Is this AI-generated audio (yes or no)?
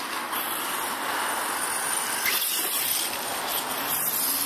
no